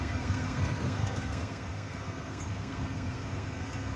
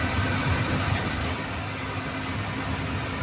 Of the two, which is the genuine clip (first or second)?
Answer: second